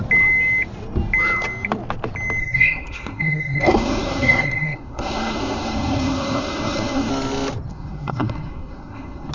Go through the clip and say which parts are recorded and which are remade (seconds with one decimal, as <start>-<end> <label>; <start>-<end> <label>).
0.0-2.4 recorded; 2.4-7.1 remade; 7.1-7.7 recorded; 7.7-9.3 remade